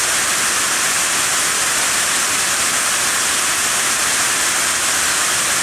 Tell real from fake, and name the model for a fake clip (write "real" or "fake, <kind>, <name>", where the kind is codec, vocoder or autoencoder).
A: real